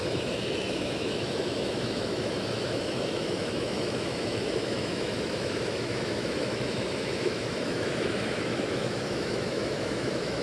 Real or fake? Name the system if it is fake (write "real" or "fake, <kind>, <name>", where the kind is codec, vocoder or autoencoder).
fake, autoencoder, DAC-VAE